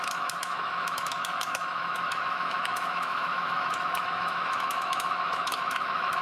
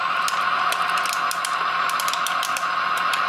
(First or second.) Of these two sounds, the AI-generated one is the first